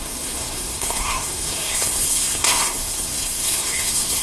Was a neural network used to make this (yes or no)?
yes